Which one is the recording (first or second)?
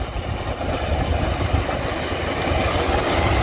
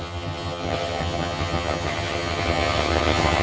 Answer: first